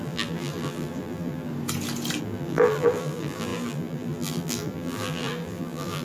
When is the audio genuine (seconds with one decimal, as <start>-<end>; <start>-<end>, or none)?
1.5-2.2